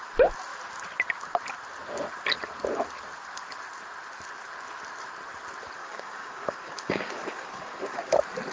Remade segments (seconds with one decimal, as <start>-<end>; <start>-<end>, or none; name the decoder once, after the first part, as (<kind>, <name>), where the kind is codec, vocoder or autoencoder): 5.8-8.1 (codec, DAC)